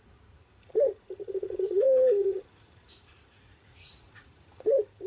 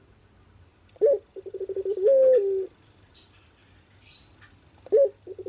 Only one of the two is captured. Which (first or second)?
second